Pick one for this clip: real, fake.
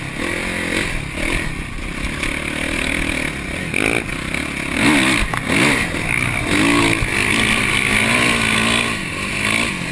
real